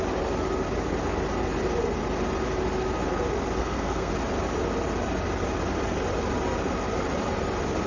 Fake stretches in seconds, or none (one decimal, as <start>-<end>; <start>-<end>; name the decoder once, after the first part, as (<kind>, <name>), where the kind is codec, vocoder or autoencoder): 3.6-4.1 (codec, SNAC)